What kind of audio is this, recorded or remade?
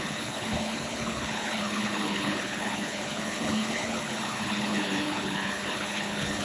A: remade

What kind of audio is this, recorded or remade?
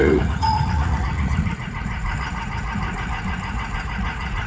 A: remade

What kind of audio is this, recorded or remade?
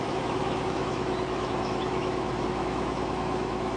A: remade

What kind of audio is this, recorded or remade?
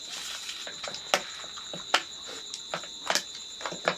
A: recorded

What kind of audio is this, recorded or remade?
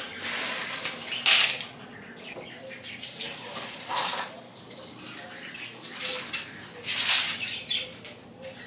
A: recorded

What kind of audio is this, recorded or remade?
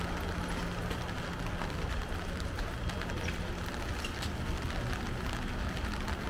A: recorded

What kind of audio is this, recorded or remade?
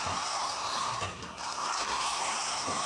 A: remade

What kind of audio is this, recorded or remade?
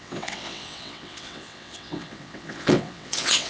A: remade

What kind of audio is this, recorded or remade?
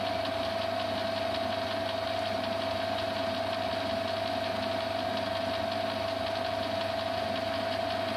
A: recorded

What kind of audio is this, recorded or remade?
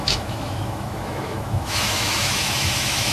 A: remade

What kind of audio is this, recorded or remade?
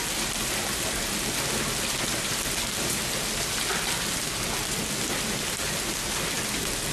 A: recorded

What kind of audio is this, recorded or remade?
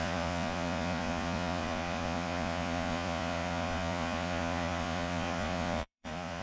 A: remade